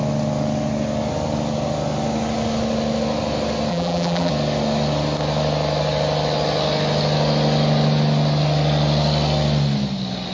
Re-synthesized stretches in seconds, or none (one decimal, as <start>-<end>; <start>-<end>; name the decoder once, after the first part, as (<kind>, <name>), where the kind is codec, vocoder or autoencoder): 3.7-4.3 (vocoder, BigVGAN v2)